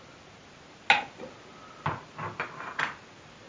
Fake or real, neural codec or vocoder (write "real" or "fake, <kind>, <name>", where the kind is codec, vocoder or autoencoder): real